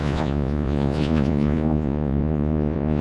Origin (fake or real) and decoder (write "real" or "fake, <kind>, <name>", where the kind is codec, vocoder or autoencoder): fake, vocoder, Vocos